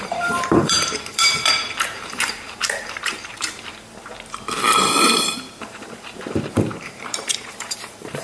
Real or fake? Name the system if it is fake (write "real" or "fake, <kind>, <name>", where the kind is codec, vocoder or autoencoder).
fake, vocoder, BigVGAN v2